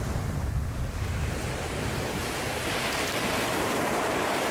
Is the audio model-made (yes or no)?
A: yes